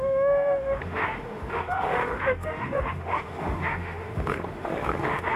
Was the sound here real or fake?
fake